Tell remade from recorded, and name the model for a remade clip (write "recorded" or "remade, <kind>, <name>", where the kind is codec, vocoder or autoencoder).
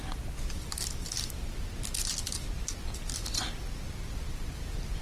recorded